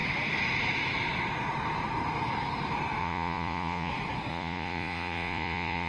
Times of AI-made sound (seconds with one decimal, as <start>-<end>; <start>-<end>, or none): 3.0-3.9; 4.3-5.9